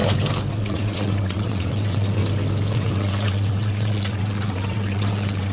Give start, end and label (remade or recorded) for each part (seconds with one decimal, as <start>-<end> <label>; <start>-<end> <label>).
0.0-0.5 recorded; 0.5-2.2 remade; 2.2-2.7 recorded; 2.7-5.5 remade

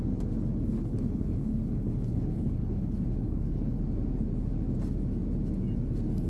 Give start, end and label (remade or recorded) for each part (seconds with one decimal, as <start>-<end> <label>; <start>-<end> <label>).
0.0-0.7 recorded; 0.7-3.8 remade; 3.8-6.3 recorded

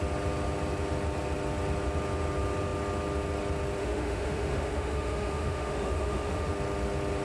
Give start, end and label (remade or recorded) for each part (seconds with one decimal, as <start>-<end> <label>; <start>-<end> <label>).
0.0-3.8 recorded; 3.8-6.5 remade; 6.5-7.2 recorded

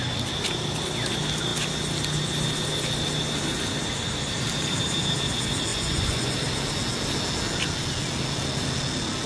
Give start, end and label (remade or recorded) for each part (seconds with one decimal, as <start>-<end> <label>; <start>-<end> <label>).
0.0-5.7 recorded; 5.7-6.3 remade; 6.3-9.3 recorded

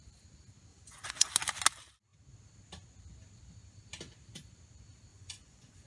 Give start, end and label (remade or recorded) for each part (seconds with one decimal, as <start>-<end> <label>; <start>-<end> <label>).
0.0-0.7 recorded; 0.7-1.3 remade; 1.3-5.1 recorded; 5.1-5.9 remade

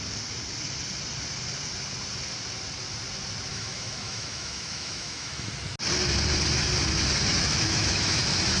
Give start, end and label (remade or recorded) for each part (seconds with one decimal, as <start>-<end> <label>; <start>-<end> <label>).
0.0-3.5 recorded; 3.5-5.5 remade; 5.5-7.3 recorded; 7.3-8.2 remade; 8.2-8.6 recorded

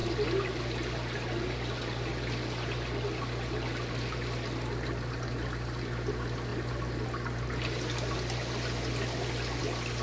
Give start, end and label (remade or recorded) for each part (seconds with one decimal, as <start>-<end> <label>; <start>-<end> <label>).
0.0-10.0 recorded

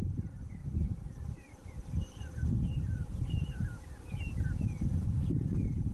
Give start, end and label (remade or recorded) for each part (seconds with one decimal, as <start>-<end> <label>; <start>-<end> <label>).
0.0-5.9 remade